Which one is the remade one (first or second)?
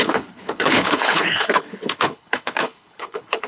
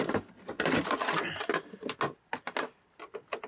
first